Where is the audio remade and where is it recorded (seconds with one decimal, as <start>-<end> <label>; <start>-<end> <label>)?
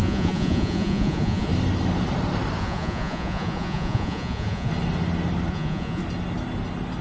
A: 0.0-1.5 remade; 1.5-2.6 recorded; 2.6-4.7 remade; 4.7-5.5 recorded; 5.5-6.0 remade; 6.0-7.0 recorded